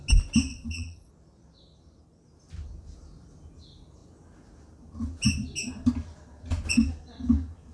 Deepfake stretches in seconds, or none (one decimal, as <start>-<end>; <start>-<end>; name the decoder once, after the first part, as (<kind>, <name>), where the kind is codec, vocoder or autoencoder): 0.5-1.1 (vocoder, WaveNeXt)